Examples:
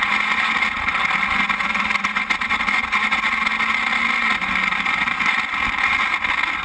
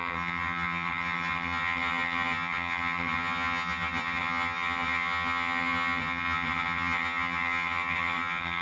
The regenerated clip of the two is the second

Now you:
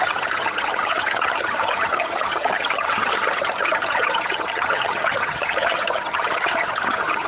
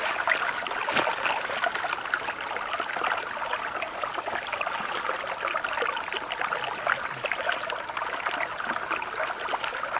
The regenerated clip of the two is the first